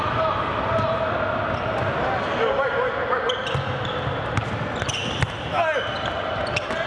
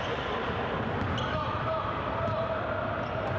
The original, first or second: first